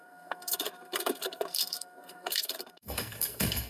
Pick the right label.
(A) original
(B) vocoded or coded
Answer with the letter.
B